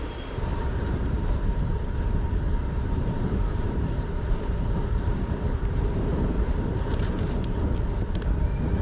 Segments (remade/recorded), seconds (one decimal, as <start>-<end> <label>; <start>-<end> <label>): 0.0-0.5 recorded; 0.5-1.8 remade; 1.8-2.6 recorded; 2.6-7.6 remade; 7.6-8.8 recorded